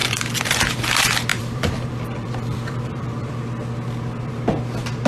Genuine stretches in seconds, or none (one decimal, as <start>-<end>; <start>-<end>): 0.7-1.3; 3.3-5.1